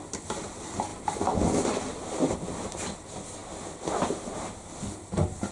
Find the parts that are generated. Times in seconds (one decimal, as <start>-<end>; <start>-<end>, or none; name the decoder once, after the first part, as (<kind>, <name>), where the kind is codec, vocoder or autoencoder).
0.9-2.3 (vocoder, BigVGAN v2)